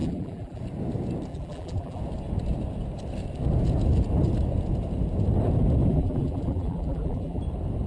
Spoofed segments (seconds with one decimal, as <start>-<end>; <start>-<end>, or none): 0.0-0.6; 1.3-2.0; 5.9-7.4